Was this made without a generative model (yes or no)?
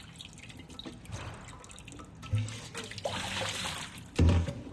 yes